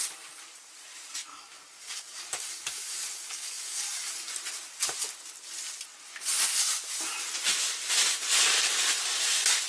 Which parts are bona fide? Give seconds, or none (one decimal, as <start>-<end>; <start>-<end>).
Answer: 0.0-1.3; 4.1-9.7